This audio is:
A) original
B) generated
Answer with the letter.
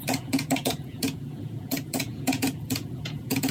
B